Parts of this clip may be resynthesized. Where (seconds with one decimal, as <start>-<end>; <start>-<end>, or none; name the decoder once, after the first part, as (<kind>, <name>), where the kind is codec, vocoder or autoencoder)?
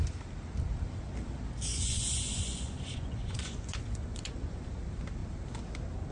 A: 1.7-4.7 (vocoder, Vocos)